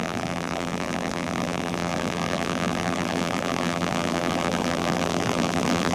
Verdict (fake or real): fake